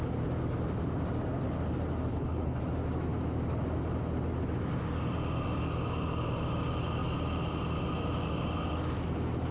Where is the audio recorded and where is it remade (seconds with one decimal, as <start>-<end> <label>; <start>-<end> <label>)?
0.0-2.1 recorded; 2.1-2.6 remade; 2.6-9.5 recorded